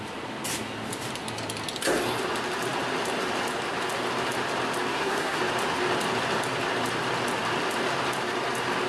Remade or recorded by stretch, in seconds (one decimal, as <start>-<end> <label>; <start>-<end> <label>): 0.0-4.9 recorded; 4.9-5.4 remade; 5.4-8.9 recorded